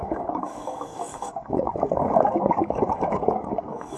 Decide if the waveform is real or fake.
fake